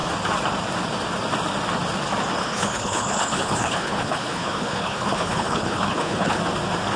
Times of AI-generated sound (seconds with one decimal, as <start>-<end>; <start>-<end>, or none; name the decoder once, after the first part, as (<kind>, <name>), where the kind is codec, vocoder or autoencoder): 2.4-6.4 (codec, HILCodec)